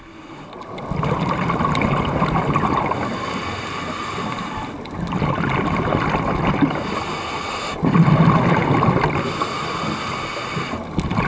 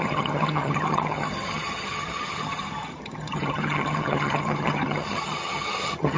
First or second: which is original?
first